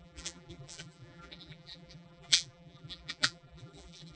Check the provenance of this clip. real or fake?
fake